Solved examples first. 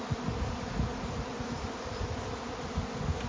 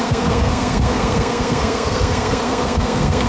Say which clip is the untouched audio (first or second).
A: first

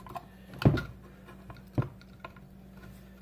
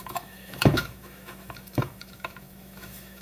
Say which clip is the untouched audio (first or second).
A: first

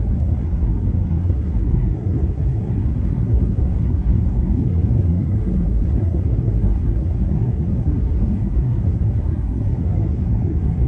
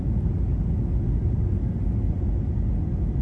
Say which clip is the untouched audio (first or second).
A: second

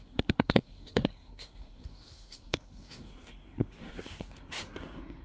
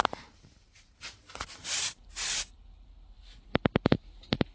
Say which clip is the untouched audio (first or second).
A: second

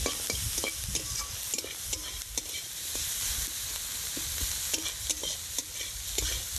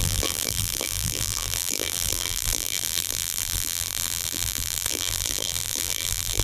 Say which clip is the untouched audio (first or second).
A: first